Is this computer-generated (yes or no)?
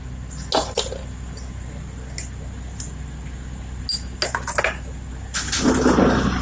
no